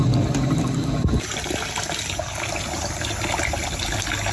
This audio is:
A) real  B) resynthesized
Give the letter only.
A